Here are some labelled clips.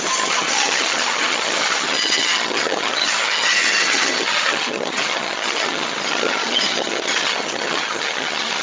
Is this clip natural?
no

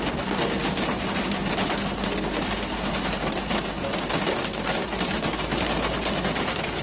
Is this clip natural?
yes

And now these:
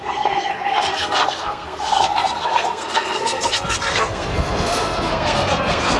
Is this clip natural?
no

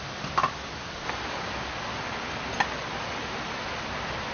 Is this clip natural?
yes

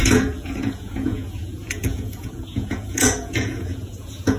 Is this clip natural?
no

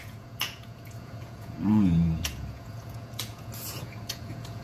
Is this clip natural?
no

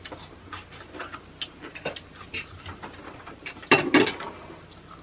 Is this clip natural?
yes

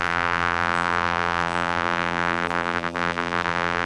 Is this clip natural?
no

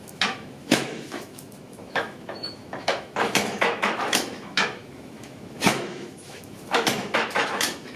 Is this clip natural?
no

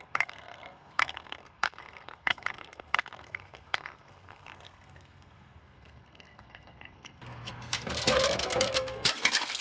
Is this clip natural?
no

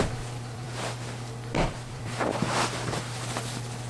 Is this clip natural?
no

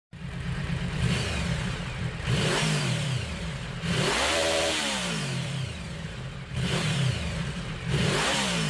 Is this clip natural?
no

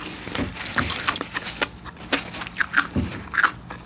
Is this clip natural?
yes